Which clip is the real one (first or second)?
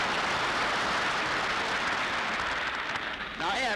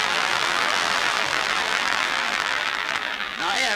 first